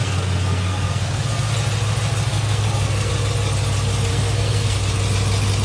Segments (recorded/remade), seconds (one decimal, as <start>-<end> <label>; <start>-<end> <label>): 0.0-1.5 remade; 1.5-2.3 recorded; 2.3-3.1 remade; 3.1-4.1 recorded; 4.1-4.8 remade; 4.8-5.6 recorded